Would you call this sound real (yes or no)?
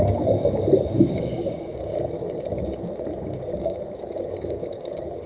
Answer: no